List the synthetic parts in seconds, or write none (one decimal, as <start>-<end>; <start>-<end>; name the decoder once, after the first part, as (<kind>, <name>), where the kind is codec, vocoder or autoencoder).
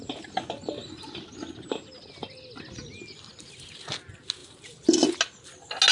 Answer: 4.4-5.1 (vocoder, BigVGAN v2)